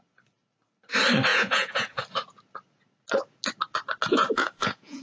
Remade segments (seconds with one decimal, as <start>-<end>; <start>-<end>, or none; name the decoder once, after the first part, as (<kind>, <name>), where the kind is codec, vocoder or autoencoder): 1.3-2.0 (vocoder, Vocos); 4.1-5.0